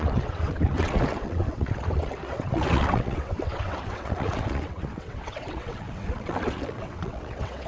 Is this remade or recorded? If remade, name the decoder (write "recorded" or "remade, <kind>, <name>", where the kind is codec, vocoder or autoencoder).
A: remade, vocoder, WaveNeXt